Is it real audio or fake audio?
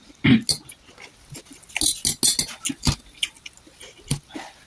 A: real